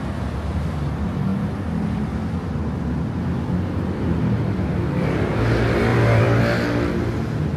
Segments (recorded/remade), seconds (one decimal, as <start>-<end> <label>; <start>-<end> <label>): 0.0-5.9 recorded; 5.9-6.4 remade; 6.4-7.6 recorded